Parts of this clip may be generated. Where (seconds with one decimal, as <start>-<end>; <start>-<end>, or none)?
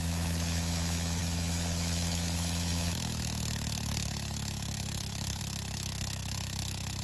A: 0.0-7.0